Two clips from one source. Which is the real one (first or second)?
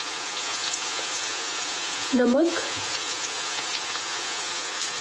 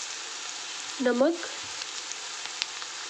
second